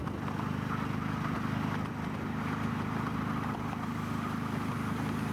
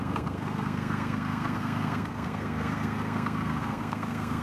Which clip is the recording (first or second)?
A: first